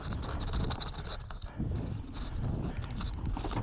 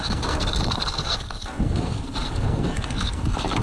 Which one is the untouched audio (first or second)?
first